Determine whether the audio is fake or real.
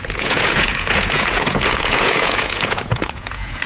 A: fake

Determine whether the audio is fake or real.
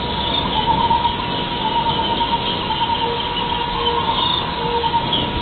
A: real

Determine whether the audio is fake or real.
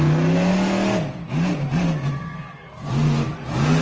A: real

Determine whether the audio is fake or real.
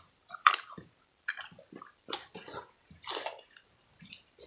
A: fake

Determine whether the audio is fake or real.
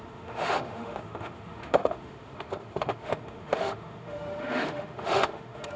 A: fake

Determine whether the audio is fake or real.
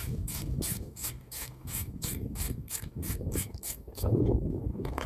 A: fake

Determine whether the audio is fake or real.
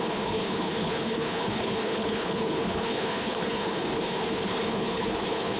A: fake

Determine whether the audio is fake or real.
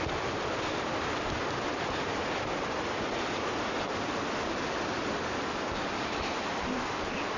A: real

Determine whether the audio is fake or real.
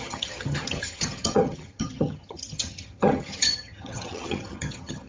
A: fake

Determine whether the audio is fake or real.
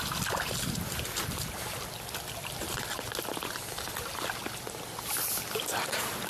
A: real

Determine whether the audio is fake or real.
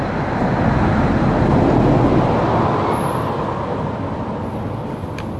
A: real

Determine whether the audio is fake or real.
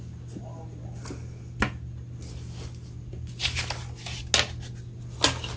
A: real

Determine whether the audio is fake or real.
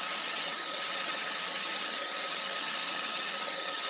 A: fake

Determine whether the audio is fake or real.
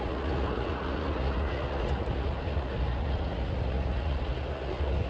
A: fake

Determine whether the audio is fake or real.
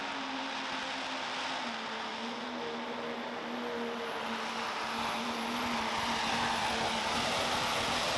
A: real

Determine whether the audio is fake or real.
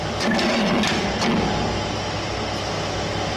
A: real